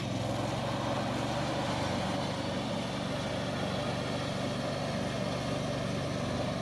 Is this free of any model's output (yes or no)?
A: yes